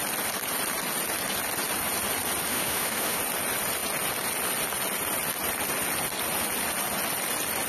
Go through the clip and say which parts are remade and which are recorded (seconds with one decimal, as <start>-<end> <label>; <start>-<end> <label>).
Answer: 0.0-2.5 recorded; 2.5-3.2 remade; 3.2-7.7 recorded